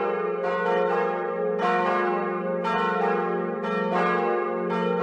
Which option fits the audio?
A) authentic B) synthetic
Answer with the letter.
A